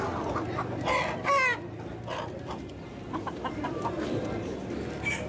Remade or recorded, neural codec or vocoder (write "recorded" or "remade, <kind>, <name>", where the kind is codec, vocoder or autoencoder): recorded